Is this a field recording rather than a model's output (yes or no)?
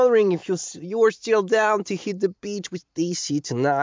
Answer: no